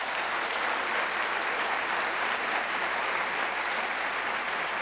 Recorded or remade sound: recorded